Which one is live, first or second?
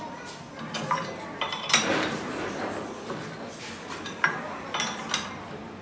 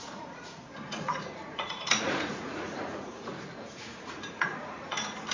first